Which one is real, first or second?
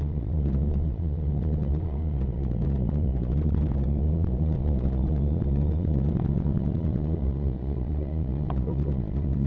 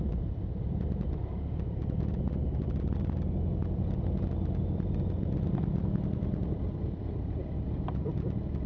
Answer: second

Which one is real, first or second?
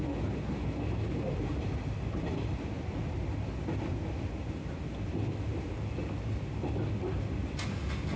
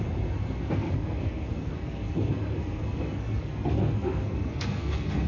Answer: first